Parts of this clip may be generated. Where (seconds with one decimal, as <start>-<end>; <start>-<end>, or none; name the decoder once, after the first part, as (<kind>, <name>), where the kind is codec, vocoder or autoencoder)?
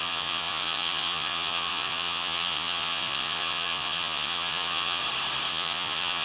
0.0-5.0 (vocoder, Vocos); 5.5-6.2